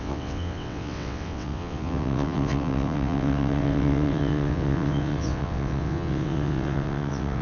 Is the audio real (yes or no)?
no